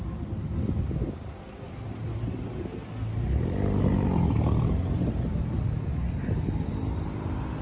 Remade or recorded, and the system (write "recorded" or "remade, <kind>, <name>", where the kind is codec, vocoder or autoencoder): recorded